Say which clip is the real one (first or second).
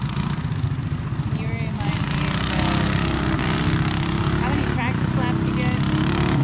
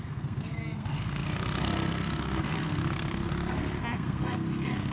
first